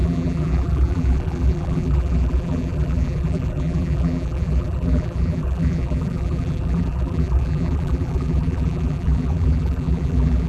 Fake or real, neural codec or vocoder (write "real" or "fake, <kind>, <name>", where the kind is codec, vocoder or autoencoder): fake, vocoder, BigVGAN v2